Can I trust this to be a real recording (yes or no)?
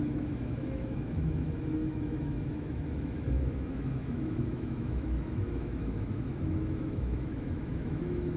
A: no